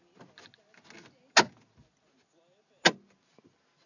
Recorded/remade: recorded